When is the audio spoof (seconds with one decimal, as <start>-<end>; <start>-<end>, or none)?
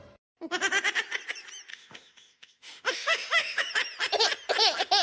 1.7-3.7